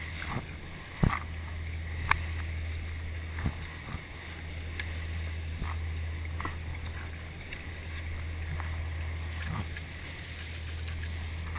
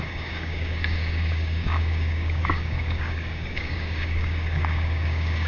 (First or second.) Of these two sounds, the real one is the first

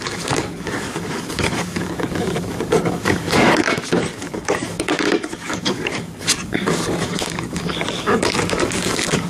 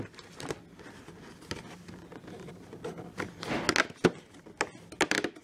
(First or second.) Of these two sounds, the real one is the second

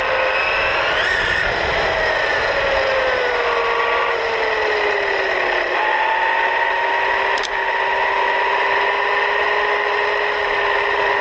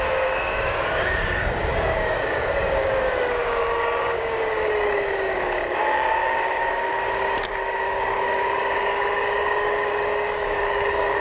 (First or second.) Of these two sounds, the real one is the first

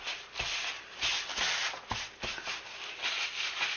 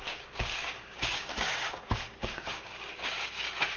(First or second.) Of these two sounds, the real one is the first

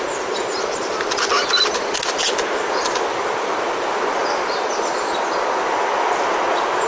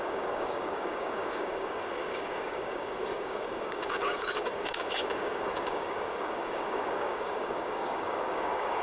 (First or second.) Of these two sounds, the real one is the first